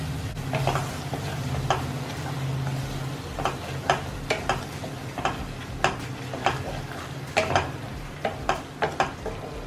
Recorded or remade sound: recorded